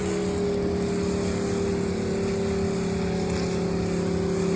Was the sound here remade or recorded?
recorded